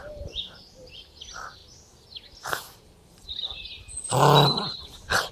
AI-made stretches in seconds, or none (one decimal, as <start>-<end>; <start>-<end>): 0.0-1.6; 4.8-5.3